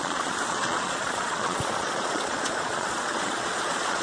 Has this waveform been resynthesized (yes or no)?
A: yes